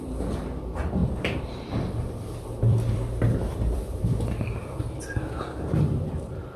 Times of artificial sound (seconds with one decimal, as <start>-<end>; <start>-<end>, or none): 1.0-5.0